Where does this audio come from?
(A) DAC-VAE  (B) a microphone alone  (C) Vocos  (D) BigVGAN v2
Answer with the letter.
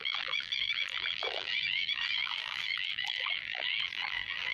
D